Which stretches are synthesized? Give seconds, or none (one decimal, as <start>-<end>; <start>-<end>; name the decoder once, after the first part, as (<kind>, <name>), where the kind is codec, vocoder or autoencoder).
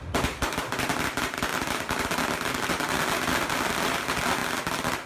none